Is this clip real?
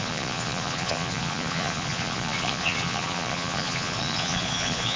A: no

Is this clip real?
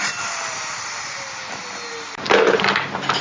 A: yes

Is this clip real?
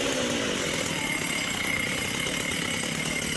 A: yes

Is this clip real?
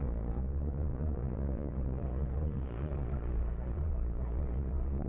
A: no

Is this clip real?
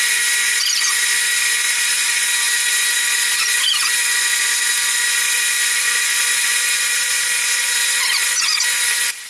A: no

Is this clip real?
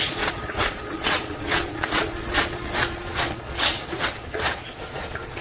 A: no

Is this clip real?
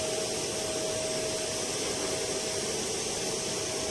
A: yes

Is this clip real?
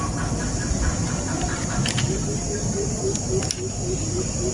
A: yes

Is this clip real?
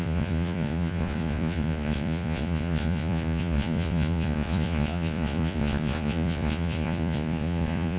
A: no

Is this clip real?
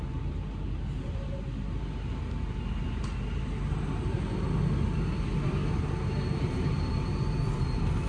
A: yes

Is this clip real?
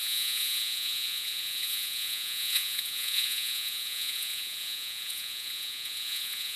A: no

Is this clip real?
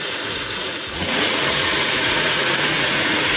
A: no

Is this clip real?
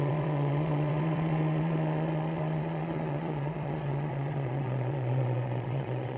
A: no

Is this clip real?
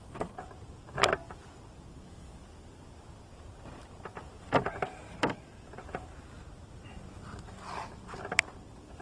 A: yes